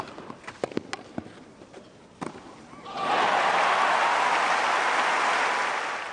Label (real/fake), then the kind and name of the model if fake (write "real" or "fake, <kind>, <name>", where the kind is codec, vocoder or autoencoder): real